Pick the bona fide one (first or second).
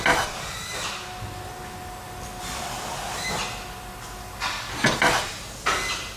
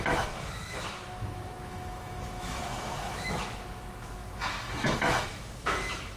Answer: first